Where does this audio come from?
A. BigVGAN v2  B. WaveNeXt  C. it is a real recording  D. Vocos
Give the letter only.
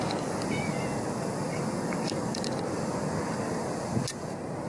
C